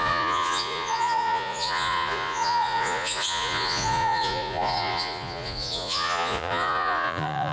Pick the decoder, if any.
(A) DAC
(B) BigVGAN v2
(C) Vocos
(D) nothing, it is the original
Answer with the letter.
C